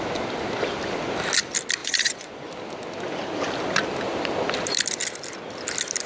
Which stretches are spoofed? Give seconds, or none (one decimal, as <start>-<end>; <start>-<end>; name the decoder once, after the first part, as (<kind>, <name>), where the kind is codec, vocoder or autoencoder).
1.8-2.5 (vocoder, Vocos)